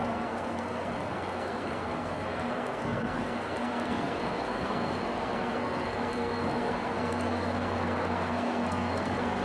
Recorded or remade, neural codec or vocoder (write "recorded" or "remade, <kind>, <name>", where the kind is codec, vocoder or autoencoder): remade, codec, SNAC